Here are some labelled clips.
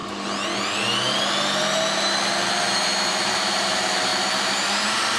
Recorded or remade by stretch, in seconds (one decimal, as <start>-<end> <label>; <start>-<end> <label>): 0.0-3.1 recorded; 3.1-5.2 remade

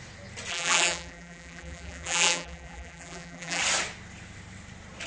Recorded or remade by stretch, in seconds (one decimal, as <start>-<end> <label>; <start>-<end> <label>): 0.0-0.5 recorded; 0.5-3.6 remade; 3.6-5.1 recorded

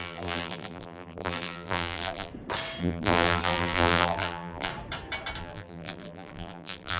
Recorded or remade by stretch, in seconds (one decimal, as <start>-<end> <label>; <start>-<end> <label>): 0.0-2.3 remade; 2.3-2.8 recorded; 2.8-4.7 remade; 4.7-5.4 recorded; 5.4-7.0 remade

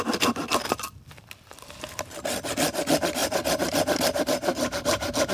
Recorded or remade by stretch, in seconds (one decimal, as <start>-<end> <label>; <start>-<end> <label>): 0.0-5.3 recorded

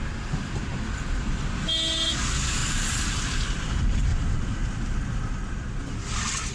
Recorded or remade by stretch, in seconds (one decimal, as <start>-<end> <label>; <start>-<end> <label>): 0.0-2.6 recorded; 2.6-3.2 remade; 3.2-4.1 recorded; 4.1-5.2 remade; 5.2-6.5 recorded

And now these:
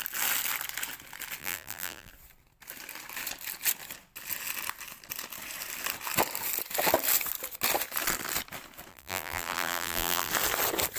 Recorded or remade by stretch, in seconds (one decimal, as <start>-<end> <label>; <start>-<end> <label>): 0.0-1.4 recorded; 1.4-2.1 remade; 2.1-8.9 recorded; 8.9-10.3 remade; 10.3-11.0 recorded

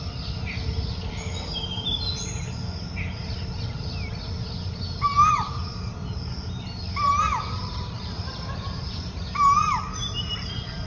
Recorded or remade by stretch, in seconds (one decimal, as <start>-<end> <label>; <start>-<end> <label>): 0.0-7.3 recorded; 7.3-10.5 remade; 10.5-10.9 recorded